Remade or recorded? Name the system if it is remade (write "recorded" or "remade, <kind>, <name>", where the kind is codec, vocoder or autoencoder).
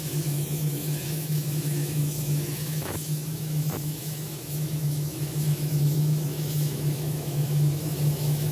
remade, autoencoder, DAC-VAE